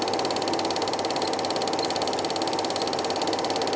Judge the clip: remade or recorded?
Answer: recorded